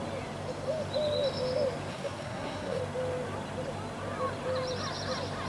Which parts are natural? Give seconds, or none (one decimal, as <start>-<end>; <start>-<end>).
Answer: 0.0-1.9; 2.8-5.5